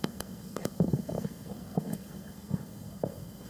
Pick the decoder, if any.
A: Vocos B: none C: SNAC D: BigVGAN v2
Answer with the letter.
C